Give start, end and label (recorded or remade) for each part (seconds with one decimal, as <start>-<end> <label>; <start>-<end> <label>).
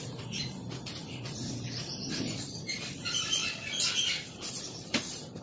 0.0-1.0 remade; 1.0-2.5 recorded; 2.5-3.4 remade; 3.4-4.6 recorded; 4.6-5.4 remade